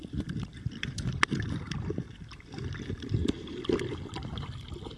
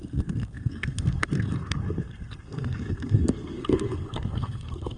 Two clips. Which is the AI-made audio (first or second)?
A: second